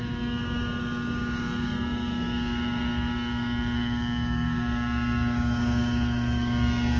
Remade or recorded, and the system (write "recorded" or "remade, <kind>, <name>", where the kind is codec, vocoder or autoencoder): remade, codec, DAC